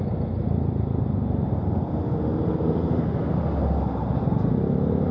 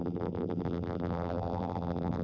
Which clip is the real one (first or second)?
first